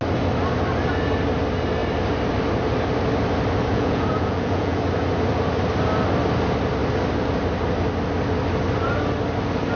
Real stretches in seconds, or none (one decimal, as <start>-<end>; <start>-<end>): 0.0-3.7; 4.8-9.8